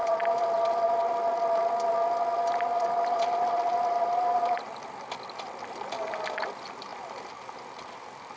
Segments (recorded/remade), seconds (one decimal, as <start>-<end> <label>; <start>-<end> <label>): 0.0-8.4 recorded